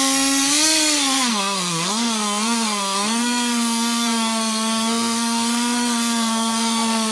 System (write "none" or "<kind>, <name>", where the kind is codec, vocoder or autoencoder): codec, SNAC